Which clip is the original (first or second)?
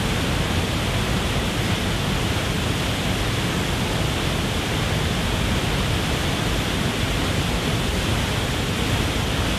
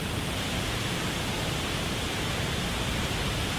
first